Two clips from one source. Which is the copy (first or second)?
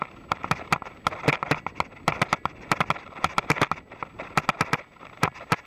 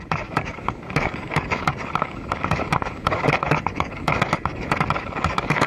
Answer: second